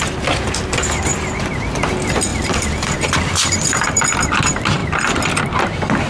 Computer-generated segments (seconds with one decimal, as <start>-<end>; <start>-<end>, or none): 2.3-4.2

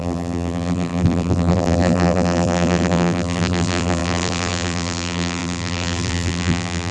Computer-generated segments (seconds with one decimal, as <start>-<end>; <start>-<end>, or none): 0.0-6.9